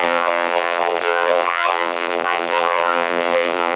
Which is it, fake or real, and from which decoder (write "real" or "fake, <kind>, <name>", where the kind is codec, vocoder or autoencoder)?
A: fake, vocoder, BigVGAN v2